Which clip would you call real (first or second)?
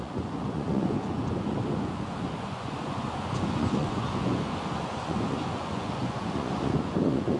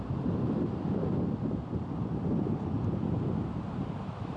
second